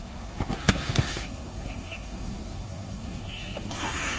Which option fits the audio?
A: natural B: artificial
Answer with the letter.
B